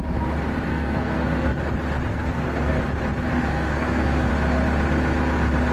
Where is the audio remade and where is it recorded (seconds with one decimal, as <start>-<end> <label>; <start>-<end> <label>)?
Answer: 0.0-0.7 recorded; 0.7-1.6 remade; 1.6-2.1 recorded; 2.1-2.8 remade; 2.8-3.3 recorded; 3.3-4.3 remade; 4.3-5.7 recorded